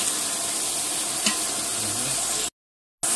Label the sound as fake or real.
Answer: real